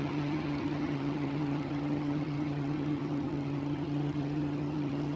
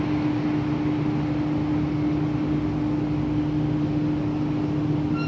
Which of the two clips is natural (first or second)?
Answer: second